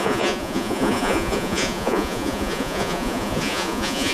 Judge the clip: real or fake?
fake